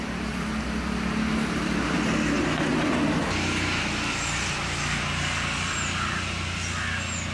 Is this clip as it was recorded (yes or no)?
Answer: yes